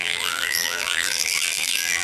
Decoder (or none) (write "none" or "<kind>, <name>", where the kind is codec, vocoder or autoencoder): vocoder, BigVGAN v2